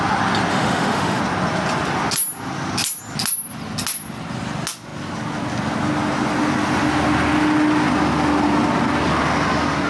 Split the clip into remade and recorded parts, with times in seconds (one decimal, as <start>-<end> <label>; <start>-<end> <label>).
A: 0.0-0.5 recorded; 0.5-1.2 remade; 1.2-9.9 recorded